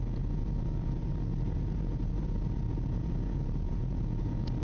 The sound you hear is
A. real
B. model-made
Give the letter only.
B